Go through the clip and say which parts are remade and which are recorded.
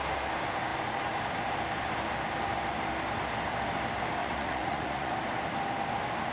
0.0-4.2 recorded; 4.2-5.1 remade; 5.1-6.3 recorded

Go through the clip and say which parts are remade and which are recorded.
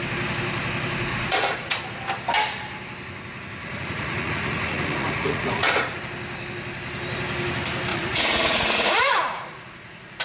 0.0-1.1 recorded; 1.1-1.9 remade; 1.9-3.6 recorded; 3.6-6.0 remade; 6.0-7.9 recorded; 7.9-10.2 remade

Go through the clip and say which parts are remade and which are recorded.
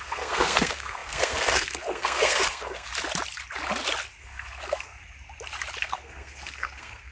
0.0-2.9 remade; 2.9-4.2 recorded; 4.2-5.0 remade; 5.0-5.8 recorded; 5.8-7.1 remade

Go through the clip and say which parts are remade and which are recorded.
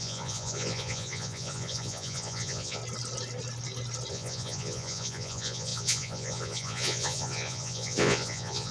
0.0-2.8 remade; 2.8-4.1 recorded; 4.1-8.7 remade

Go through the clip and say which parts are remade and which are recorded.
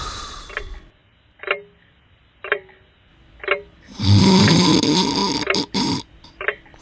0.0-1.0 remade; 1.0-4.4 recorded; 4.4-5.2 remade; 5.2-5.7 recorded; 5.7-6.8 remade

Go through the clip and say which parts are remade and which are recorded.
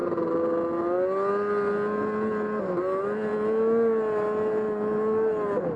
0.0-5.8 recorded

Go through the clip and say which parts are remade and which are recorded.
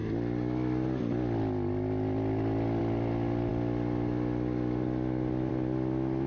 0.0-6.3 recorded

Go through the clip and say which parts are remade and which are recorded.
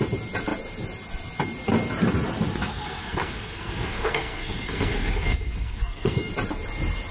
0.0-2.7 recorded; 2.7-6.3 remade; 6.3-7.1 recorded